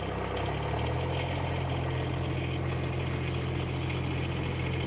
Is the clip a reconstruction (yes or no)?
no